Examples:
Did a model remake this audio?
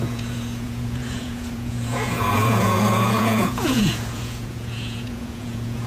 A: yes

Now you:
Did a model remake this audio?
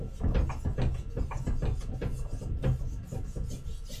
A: no